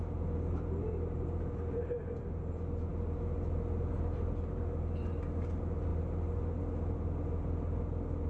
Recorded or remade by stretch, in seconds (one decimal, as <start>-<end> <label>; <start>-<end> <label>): 0.0-8.3 recorded